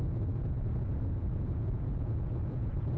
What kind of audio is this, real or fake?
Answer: fake